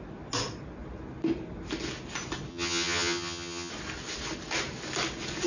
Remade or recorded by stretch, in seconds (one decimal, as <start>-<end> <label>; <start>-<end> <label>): 0.0-2.5 recorded; 2.5-3.7 remade; 3.7-5.5 recorded